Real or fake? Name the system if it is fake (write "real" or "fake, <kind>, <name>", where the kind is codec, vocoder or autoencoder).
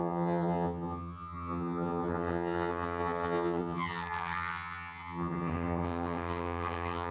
fake, vocoder, HiFi-GAN